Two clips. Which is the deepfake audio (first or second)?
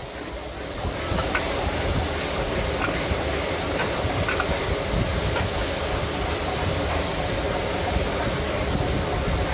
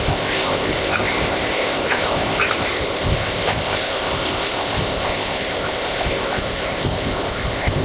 second